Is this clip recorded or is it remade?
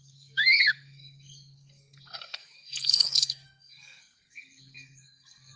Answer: remade